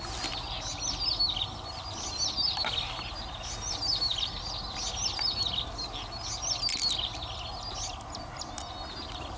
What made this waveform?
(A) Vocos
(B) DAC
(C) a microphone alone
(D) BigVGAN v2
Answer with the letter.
C